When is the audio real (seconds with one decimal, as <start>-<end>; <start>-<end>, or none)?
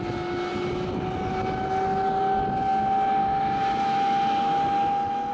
0.0-3.2